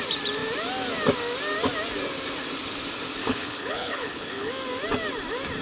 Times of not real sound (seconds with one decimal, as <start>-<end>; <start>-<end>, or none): 3.2-4.5